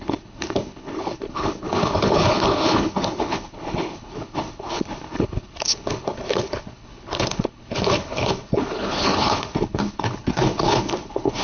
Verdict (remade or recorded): remade